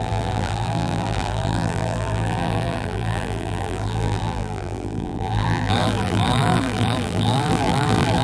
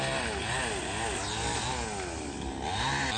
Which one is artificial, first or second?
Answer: first